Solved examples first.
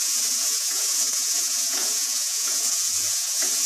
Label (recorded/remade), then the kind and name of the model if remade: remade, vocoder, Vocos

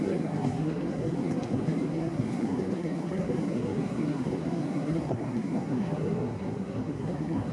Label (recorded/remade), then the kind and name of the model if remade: remade, codec, SNAC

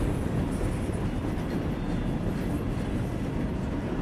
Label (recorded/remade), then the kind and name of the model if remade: recorded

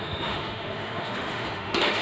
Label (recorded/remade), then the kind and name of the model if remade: remade, autoencoder, DAC-VAE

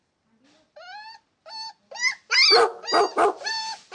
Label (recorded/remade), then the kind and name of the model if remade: recorded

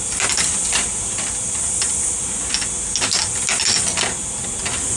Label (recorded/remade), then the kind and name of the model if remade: recorded